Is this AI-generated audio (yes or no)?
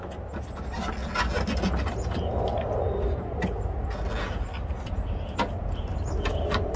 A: no